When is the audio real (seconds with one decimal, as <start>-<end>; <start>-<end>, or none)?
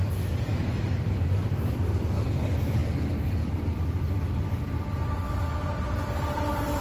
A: 0.0-0.5; 1.3-6.8